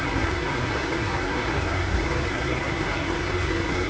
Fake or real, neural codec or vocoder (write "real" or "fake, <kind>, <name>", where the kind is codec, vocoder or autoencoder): fake, codec, SNAC